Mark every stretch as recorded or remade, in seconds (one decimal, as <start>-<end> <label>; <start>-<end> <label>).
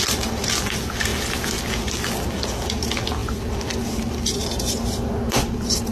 0.0-5.9 recorded